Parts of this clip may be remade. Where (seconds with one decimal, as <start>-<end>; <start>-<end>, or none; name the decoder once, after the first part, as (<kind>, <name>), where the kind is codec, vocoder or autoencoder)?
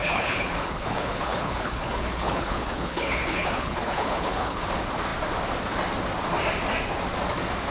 0.0-4.6 (codec, HILCodec)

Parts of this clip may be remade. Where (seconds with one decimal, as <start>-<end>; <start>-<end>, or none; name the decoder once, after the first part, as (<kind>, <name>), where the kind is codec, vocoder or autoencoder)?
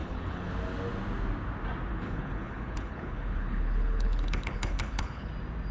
0.0-0.5 (codec, HILCodec); 1.9-5.3